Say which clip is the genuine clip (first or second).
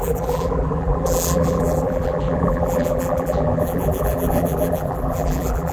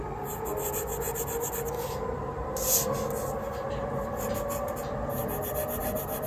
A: second